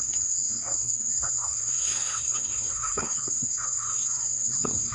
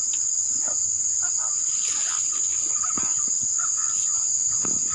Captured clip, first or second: second